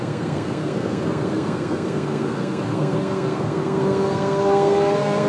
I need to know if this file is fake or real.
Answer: fake